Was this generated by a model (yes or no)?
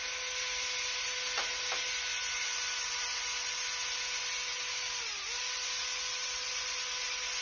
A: no